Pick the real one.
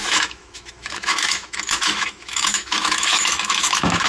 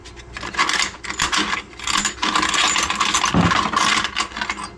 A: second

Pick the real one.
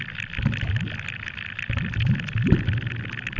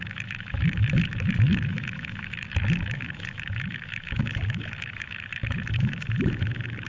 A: first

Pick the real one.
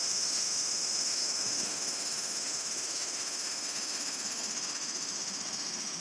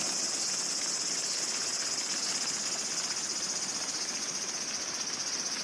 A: second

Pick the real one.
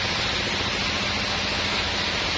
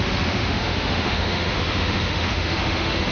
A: first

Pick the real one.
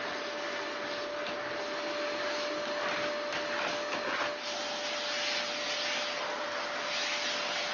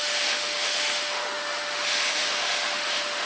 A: first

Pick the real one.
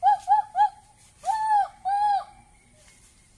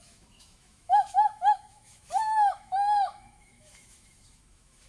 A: first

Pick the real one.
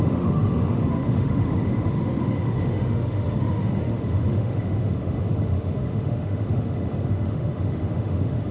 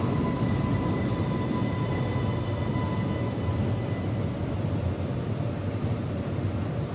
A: second